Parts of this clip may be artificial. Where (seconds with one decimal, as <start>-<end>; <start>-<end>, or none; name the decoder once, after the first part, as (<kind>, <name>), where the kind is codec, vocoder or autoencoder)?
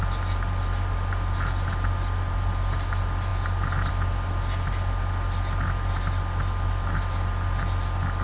none